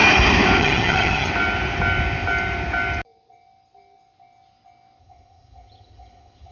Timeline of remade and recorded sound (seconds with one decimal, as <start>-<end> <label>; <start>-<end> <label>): 0.0-0.6 recorded; 0.6-1.3 remade; 1.3-5.0 recorded; 5.0-6.5 remade

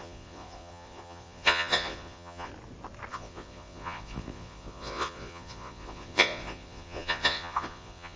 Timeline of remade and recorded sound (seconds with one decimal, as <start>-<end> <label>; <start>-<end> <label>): 0.0-2.5 remade; 2.5-3.1 recorded; 3.1-8.2 remade